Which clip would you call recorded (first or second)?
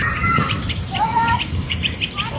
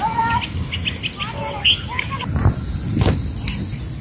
second